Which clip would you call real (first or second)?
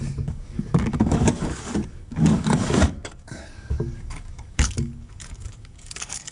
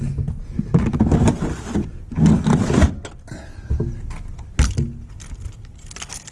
second